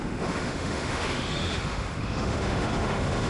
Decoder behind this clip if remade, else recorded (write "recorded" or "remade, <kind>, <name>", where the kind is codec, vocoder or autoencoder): remade, autoencoder, DAC-VAE